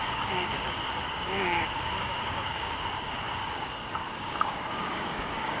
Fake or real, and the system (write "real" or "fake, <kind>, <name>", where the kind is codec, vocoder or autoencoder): fake, codec, DAC